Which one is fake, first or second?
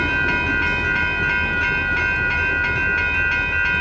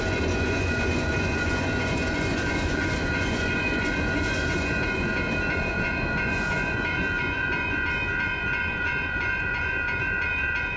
second